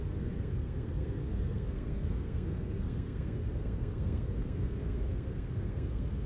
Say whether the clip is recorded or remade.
remade